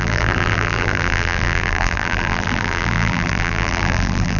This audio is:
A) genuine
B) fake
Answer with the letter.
B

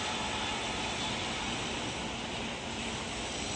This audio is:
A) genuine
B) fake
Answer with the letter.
A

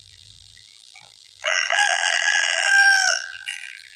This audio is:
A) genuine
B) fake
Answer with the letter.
B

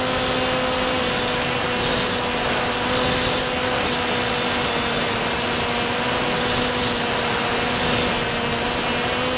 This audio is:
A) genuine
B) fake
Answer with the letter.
A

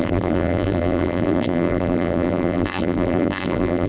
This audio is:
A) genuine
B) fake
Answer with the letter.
B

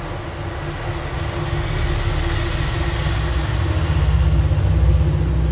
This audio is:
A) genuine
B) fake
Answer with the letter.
A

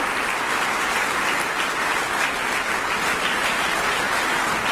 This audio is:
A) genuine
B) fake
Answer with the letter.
A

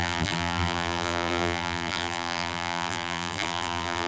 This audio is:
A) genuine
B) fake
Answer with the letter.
B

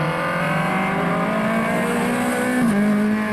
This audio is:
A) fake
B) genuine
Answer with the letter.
B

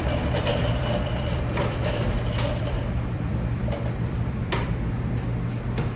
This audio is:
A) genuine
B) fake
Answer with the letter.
B